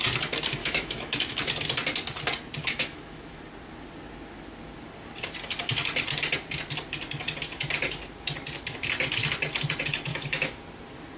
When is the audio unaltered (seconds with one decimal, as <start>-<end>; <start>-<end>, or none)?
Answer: 0.0-0.6; 1.5-2.6; 3.4-10.1; 10.6-11.2